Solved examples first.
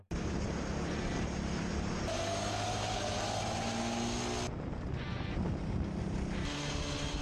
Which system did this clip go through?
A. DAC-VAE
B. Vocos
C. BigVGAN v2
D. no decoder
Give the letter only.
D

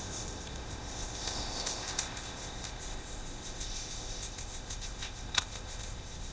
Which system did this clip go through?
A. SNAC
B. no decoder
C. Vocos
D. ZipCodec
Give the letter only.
D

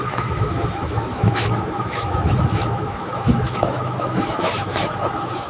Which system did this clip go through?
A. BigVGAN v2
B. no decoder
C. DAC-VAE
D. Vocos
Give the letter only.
C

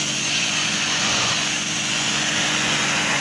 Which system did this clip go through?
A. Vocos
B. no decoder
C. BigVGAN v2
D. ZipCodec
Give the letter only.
A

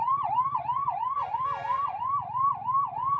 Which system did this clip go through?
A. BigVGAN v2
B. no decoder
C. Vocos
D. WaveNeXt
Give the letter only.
A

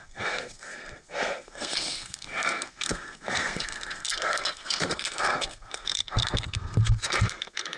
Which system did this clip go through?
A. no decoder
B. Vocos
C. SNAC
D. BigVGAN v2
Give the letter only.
C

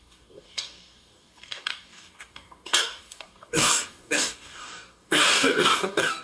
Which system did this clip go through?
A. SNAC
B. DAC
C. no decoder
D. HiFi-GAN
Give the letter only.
B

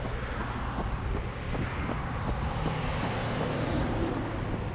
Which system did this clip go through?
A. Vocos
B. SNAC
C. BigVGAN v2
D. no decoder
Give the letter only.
D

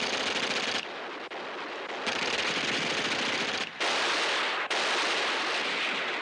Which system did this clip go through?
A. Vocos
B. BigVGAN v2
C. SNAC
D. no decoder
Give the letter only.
D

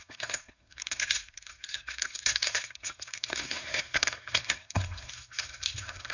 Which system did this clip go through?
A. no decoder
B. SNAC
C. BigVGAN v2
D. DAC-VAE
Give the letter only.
B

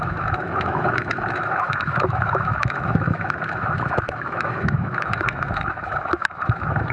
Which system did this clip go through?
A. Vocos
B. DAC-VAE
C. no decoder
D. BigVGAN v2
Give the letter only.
B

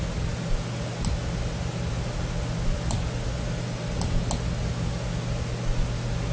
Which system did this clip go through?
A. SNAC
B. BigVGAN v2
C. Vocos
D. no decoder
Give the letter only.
D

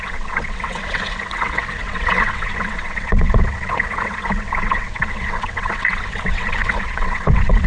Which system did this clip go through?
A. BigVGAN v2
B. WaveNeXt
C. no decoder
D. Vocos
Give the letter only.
B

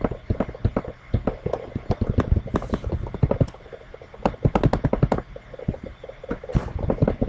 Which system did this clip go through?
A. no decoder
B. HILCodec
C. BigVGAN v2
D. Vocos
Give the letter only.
A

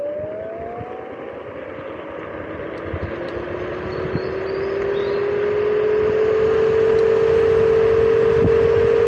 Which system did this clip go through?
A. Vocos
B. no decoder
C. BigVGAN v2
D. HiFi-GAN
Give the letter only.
B